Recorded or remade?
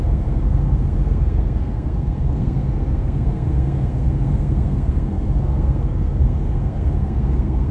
remade